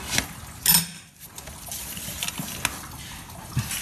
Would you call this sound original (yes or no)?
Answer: yes